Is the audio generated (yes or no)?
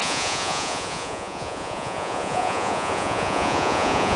yes